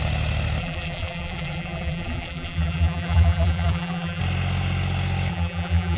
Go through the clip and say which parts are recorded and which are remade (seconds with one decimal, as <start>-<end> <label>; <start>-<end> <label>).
0.0-0.6 recorded; 0.6-4.2 remade; 4.2-5.3 recorded; 5.3-6.0 remade